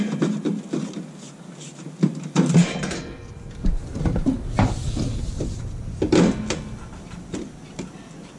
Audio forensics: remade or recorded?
recorded